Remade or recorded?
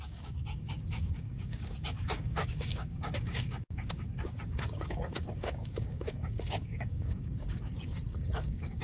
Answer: remade